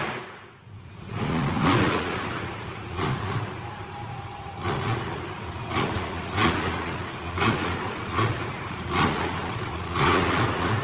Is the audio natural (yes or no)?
no